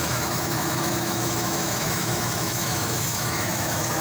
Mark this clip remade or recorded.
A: remade